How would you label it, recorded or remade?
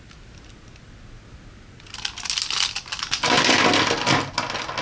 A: recorded